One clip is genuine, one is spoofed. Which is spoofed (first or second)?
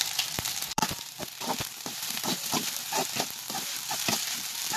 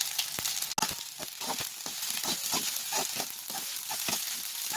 first